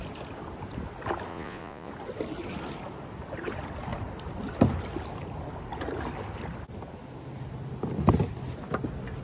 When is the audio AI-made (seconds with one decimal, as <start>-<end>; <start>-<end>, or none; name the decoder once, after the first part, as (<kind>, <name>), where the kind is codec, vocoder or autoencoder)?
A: 1.3-1.9 (vocoder, Vocos)